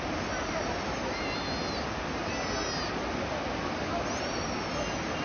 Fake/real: real